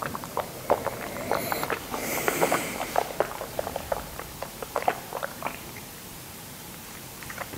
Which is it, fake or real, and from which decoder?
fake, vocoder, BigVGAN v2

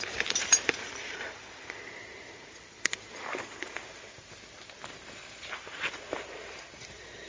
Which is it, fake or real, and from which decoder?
fake, vocoder, BigVGAN v2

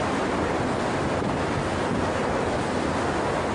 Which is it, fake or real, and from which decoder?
real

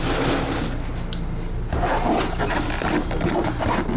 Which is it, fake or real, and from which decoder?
real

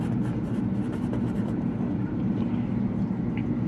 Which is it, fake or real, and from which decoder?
fake, vocoder, BigVGAN v2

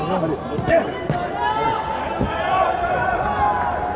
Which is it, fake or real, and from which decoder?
real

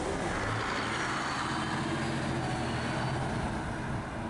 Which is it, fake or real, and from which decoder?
real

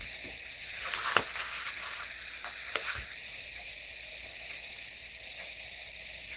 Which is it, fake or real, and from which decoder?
real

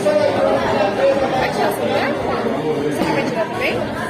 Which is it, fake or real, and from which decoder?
real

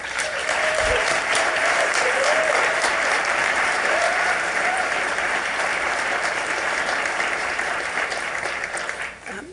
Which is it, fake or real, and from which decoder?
fake, vocoder, BigVGAN v2